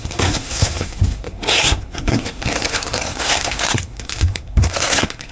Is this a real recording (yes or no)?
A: no